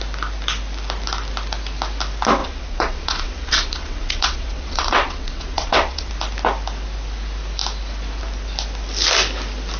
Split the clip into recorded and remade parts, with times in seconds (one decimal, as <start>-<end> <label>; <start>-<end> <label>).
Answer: 0.0-2.4 recorded; 2.4-6.1 remade; 6.1-9.8 recorded